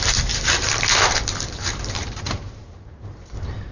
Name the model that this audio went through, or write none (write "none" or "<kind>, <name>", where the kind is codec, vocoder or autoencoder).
vocoder, BigVGAN v2